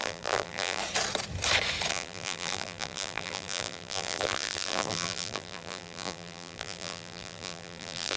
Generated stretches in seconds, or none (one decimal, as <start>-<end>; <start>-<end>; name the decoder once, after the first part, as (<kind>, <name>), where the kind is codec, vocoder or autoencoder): 0.0-0.8 (vocoder, BigVGAN v2); 1.9-8.2